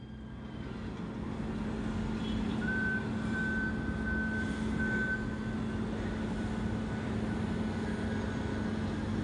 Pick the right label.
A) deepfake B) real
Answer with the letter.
B